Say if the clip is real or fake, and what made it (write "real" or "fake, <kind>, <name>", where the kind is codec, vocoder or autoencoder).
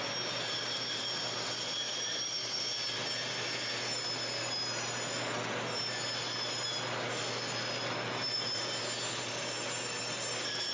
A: real